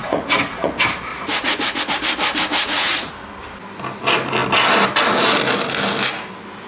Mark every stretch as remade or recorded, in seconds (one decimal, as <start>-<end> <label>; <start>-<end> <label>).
0.0-0.7 remade; 0.7-1.1 recorded; 1.1-1.8 remade; 1.8-2.5 recorded; 2.5-3.1 remade; 3.1-6.7 recorded